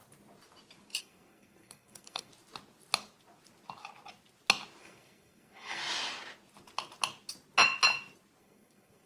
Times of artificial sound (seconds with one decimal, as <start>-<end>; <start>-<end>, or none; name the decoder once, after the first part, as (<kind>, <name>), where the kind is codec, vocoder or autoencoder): 1.0-2.3 (codec, SNAC); 4.8-5.8; 8.4-9.1